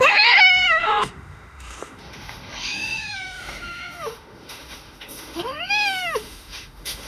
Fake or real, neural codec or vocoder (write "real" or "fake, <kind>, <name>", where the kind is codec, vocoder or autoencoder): fake, autoencoder, DAC-VAE